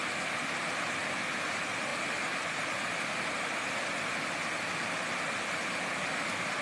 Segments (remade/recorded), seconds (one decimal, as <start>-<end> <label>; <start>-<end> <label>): 0.0-6.6 recorded